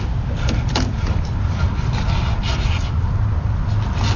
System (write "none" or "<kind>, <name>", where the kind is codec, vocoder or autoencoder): none